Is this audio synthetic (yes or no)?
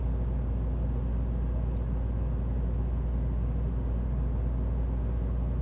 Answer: no